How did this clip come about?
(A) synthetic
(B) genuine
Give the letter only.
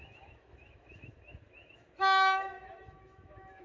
A